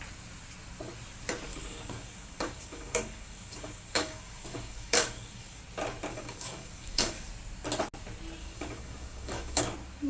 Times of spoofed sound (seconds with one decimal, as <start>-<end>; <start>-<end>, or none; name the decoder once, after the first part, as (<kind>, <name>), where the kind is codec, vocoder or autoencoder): 1.5-5.6 (codec, DAC); 6.1-7.3; 8.4-9.6